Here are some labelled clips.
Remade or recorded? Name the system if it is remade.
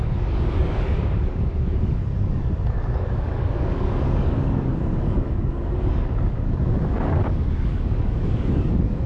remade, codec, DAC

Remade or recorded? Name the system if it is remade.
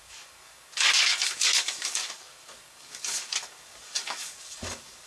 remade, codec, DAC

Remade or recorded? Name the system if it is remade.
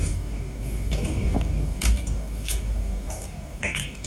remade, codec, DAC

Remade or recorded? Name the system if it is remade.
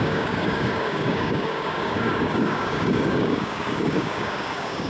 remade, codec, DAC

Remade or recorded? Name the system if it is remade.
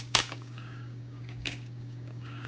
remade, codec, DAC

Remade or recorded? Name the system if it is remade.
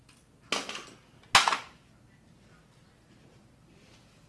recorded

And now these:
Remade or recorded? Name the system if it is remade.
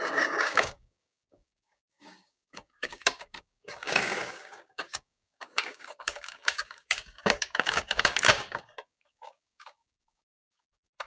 remade, codec, DAC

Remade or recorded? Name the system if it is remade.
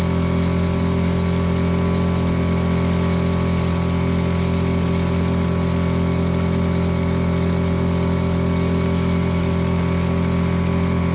recorded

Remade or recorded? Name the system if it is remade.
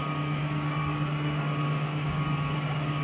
remade, codec, DAC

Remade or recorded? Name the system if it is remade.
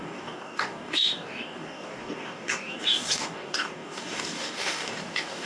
remade, codec, DAC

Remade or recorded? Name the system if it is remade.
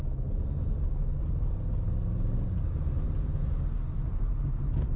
recorded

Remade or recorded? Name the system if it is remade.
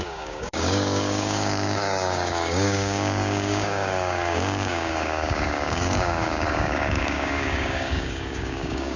remade, codec, DAC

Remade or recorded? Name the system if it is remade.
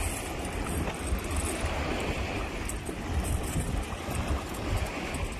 recorded